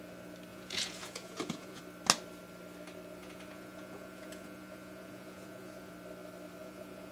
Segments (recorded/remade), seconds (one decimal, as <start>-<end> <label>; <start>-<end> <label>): 0.0-0.5 recorded; 0.5-1.8 remade; 1.8-3.2 recorded; 3.2-5.9 remade; 5.9-6.6 recorded; 6.6-7.1 remade